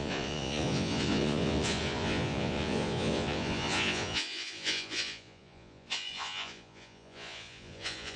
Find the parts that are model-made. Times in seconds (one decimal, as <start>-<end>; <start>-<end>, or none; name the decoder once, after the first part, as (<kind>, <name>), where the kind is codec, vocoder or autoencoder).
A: 0.0-8.2 (vocoder, Vocos)